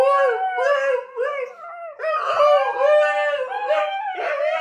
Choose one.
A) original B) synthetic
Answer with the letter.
A